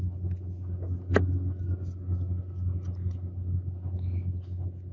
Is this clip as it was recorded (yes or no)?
yes